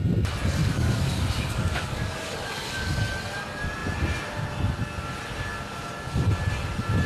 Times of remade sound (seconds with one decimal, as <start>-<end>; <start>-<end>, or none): 0.6-3.0